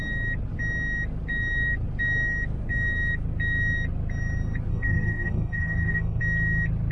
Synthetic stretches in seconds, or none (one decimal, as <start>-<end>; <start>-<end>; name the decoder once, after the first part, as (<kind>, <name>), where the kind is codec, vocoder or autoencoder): 4.7-6.2 (codec, DAC)